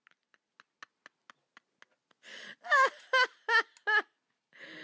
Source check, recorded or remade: recorded